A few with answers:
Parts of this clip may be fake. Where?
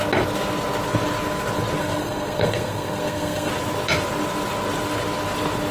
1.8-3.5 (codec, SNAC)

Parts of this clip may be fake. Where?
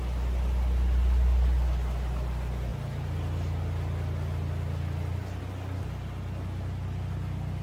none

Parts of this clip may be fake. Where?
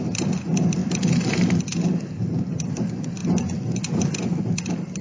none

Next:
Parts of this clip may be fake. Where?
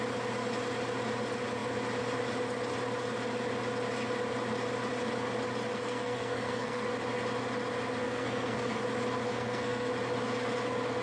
5.7-6.9 (codec, SNAC); 8.0-8.8; 9.3-9.9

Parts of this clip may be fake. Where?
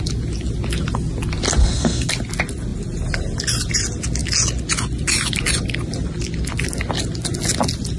1.6-2.1 (codec, SNAC)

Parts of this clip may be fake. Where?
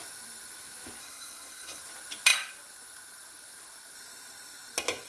1.0-1.8 (codec, SNAC)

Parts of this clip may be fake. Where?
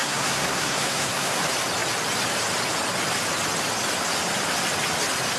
0.0-1.4 (codec, SNAC)